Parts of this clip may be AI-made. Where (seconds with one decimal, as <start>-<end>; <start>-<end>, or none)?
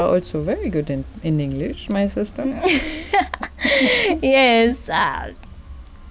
none